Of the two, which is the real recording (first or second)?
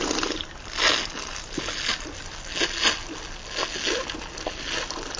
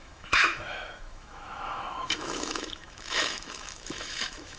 first